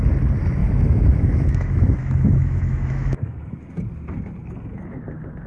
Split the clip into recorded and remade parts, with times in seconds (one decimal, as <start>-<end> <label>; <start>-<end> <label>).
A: 0.0-0.6 recorded; 0.6-3.6 remade; 3.6-5.5 recorded